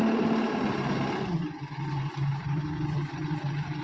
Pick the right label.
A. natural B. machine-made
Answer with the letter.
A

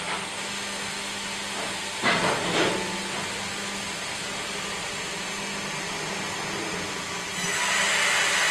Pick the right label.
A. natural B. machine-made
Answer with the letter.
A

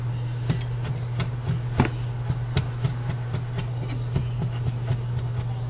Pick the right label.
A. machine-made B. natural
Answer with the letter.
B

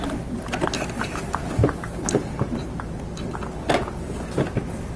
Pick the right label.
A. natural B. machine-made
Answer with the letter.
A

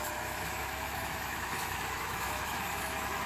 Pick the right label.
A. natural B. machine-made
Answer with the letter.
B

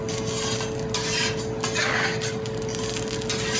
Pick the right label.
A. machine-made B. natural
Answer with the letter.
B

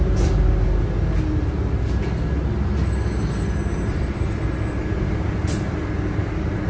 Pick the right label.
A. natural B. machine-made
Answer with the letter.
A